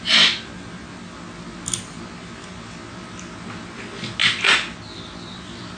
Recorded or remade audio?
recorded